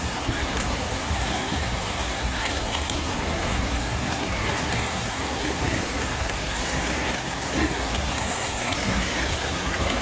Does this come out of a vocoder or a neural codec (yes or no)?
yes